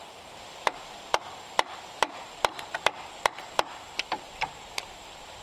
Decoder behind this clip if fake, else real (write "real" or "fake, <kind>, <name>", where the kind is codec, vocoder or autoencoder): fake, vocoder, BigVGAN v2